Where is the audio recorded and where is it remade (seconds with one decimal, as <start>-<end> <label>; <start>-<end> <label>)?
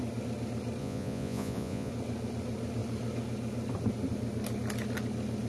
0.0-0.8 recorded; 0.8-1.9 remade; 1.9-5.5 recorded